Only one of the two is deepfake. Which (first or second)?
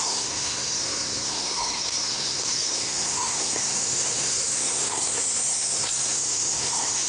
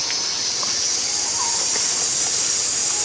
first